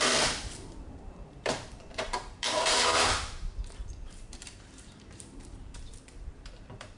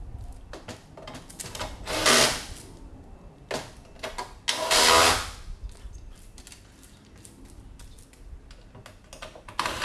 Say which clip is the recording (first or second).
second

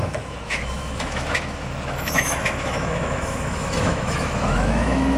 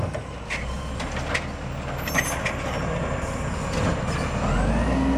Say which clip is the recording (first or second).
second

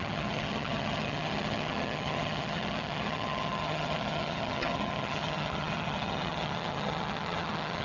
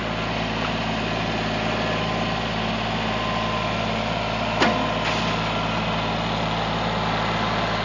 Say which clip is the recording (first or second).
second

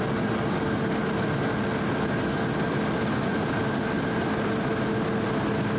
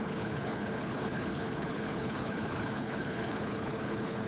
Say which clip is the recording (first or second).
first